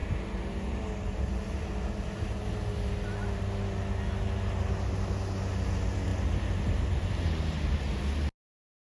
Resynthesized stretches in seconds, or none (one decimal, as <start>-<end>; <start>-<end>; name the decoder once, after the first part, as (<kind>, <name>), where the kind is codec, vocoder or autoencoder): none